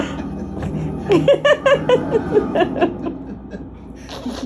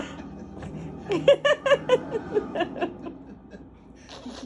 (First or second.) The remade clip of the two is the second